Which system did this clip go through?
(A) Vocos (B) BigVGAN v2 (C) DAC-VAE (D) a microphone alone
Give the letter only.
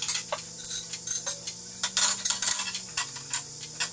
D